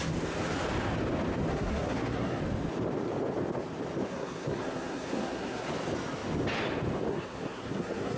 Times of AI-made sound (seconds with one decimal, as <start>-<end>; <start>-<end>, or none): 1.5-2.4; 4.1-5.7; 7.1-8.2